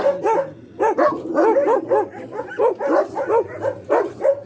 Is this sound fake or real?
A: real